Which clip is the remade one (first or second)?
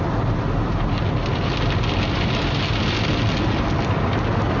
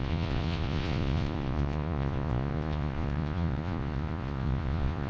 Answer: second